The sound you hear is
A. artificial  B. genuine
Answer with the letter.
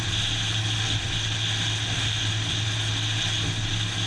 B